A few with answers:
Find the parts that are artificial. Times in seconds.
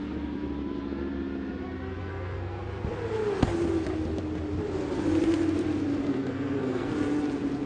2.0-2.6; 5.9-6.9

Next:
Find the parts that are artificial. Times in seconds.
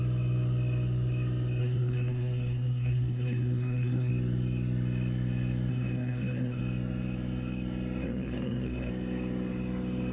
1.6-4.1; 5.7-6.6; 8.0-8.9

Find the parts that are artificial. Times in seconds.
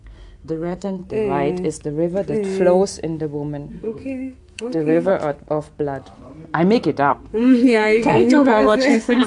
0.0-1.0; 3.7-5.1; 7.1-9.3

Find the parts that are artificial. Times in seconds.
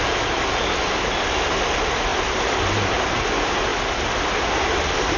none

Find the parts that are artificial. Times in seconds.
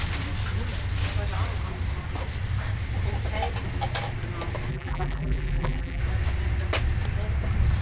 4.7-6.0